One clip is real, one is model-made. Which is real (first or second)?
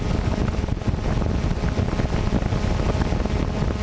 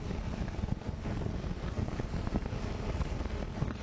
first